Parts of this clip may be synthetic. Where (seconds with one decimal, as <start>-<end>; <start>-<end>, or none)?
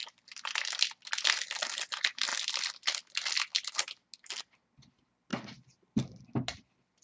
none